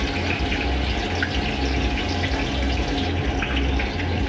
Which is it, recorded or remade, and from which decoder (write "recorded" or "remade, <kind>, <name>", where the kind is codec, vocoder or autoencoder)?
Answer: recorded